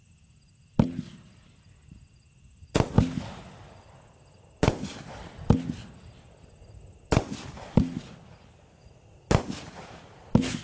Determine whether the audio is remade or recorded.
recorded